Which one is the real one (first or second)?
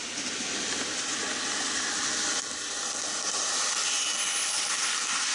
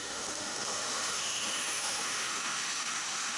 first